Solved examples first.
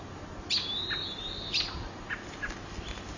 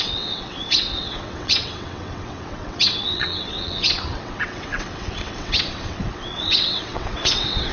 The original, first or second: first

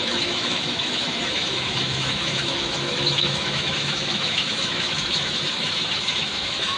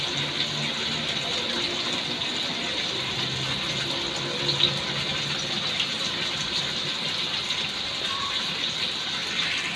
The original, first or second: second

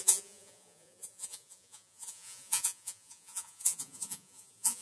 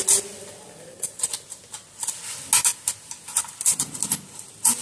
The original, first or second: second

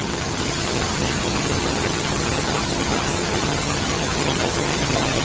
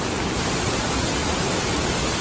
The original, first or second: second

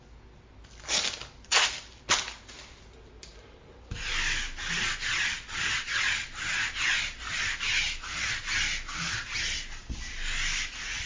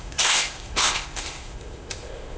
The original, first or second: first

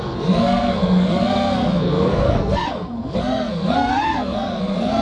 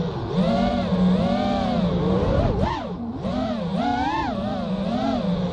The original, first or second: second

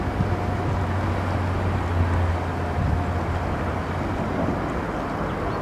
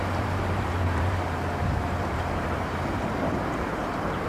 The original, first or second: first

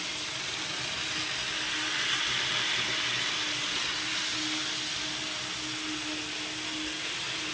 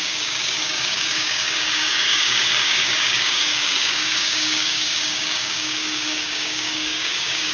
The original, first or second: first